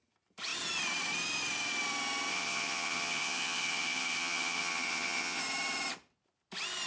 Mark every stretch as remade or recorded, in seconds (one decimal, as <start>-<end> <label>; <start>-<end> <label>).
0.0-2.3 recorded; 2.3-5.4 remade; 5.4-6.9 recorded